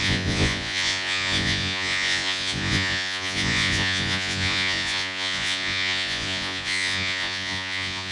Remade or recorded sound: remade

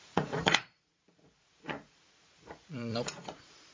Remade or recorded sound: remade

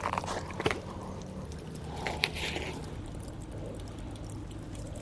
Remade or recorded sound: recorded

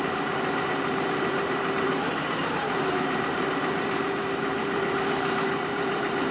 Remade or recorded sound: remade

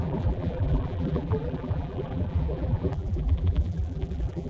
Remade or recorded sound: remade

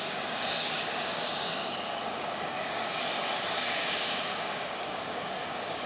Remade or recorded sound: remade